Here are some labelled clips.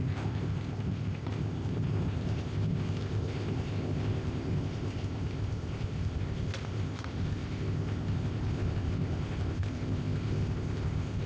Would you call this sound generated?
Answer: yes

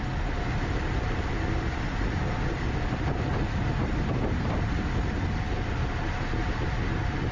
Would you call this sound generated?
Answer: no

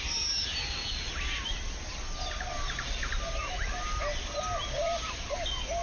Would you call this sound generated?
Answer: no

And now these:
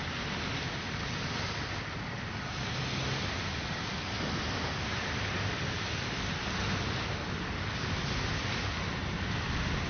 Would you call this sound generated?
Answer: no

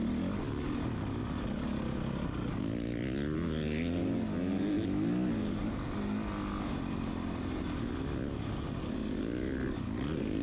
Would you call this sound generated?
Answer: no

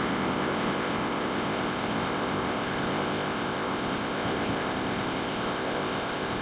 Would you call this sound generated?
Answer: yes